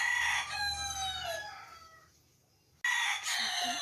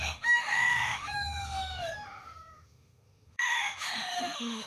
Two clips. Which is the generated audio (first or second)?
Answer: second